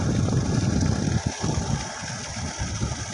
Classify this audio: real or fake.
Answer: real